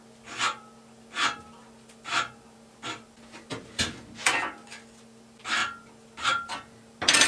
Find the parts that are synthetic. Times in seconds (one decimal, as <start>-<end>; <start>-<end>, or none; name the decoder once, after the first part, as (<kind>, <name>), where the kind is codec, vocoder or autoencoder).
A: none